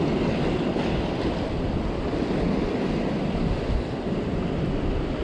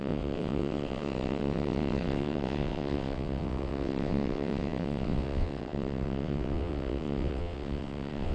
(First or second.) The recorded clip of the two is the first